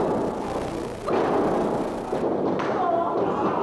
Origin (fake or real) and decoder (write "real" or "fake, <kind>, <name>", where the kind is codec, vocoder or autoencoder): real